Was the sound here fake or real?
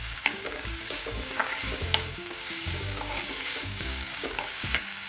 fake